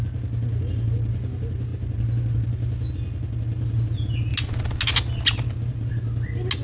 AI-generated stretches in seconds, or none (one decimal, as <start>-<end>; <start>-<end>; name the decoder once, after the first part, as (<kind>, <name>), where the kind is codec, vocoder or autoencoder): none